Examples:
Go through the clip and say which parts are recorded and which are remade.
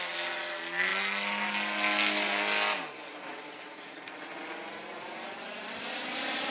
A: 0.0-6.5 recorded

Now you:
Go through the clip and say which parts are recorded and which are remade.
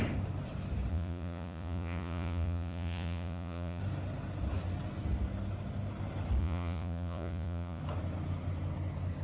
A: 0.0-0.9 recorded; 0.9-3.8 remade; 3.8-6.4 recorded; 6.4-7.8 remade; 7.8-9.2 recorded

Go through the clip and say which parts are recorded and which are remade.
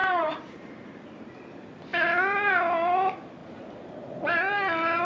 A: 0.0-1.3 remade; 1.3-3.4 recorded; 3.4-4.2 remade; 4.2-5.0 recorded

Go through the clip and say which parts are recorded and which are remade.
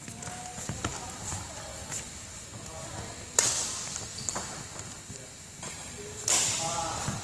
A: 0.0-7.2 recorded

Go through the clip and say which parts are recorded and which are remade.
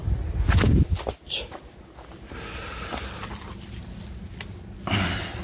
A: 0.0-5.4 recorded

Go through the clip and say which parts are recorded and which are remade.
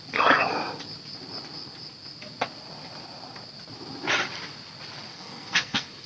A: 0.0-5.1 recorded; 5.1-6.1 remade